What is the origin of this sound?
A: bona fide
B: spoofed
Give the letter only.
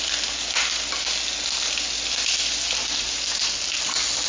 A